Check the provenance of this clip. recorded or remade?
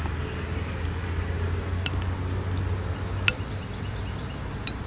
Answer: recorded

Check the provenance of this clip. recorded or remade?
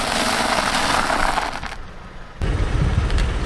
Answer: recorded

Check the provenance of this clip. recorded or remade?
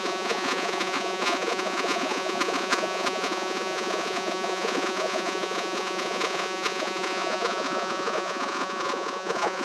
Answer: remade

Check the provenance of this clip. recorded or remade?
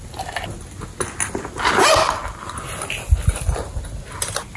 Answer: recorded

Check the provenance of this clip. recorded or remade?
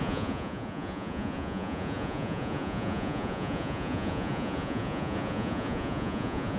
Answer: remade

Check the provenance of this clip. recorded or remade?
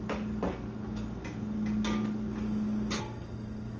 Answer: recorded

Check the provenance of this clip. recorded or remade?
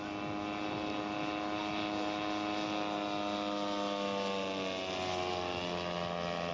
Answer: recorded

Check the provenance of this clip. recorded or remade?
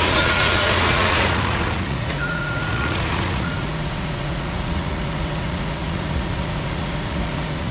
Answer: remade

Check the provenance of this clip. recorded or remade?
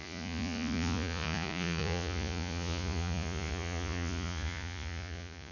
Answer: remade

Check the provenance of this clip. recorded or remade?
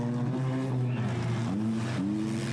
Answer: recorded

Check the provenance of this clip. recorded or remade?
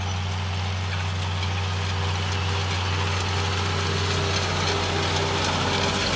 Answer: recorded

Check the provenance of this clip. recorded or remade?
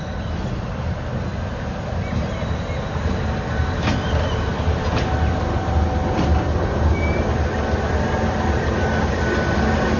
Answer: recorded